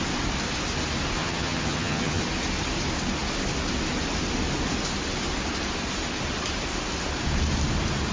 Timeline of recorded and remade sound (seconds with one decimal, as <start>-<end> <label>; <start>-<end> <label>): 0.0-1.2 recorded; 1.2-2.2 remade; 2.2-8.1 recorded